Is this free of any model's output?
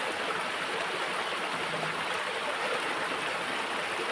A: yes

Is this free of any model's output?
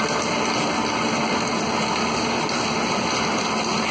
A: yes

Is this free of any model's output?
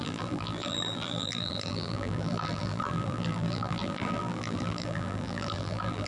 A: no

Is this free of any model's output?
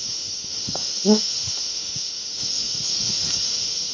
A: no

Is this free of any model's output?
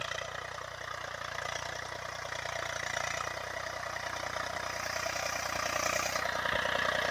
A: yes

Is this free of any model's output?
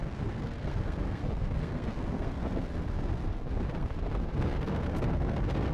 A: no